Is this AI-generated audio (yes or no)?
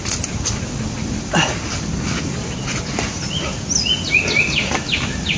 no